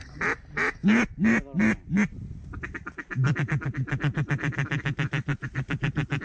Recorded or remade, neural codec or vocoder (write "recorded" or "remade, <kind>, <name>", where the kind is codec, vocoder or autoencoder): recorded